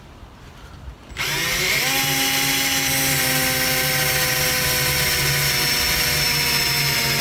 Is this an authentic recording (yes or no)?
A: yes